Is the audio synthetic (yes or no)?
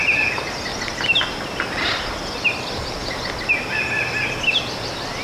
no